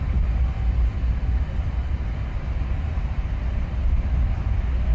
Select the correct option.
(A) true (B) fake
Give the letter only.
A